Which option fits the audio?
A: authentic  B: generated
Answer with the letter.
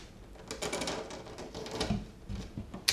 A